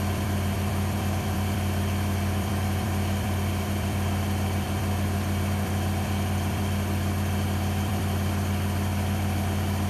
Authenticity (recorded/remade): remade